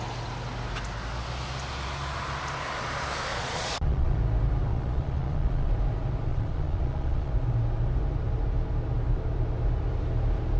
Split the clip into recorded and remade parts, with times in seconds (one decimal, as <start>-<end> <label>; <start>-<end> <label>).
0.0-3.3 recorded; 3.3-4.2 remade; 4.2-4.7 recorded; 4.7-5.7 remade; 5.7-6.3 recorded; 6.3-7.3 remade; 7.3-10.6 recorded